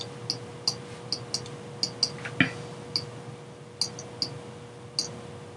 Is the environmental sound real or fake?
real